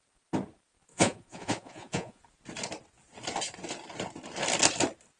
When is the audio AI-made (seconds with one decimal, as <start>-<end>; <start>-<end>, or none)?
0.9-2.2